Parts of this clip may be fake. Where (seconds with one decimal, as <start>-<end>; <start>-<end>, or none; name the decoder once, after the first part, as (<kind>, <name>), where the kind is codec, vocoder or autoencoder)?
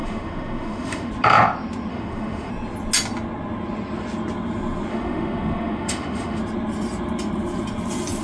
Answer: 0.0-1.1 (autoencoder, DAC-VAE); 1.9-2.5; 4.9-6.4